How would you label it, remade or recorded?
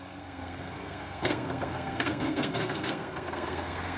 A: remade